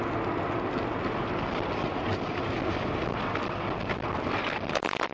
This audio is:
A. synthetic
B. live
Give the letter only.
B